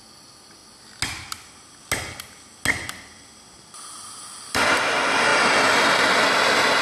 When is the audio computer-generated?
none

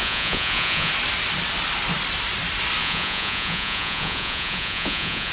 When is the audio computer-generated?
0.0-0.9; 2.8-5.3

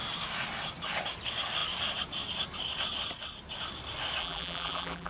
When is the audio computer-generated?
4.2-5.1

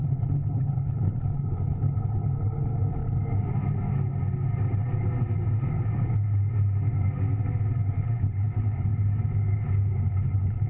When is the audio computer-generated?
0.0-3.0; 7.9-8.9; 10.1-10.7

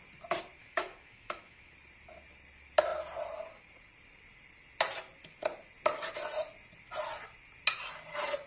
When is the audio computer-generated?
0.6-1.7

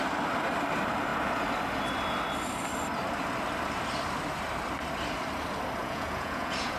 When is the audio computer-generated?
5.8-6.8

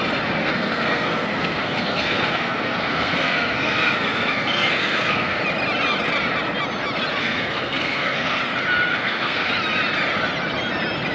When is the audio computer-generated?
0.4-5.4; 7.2-8.4; 8.9-9.5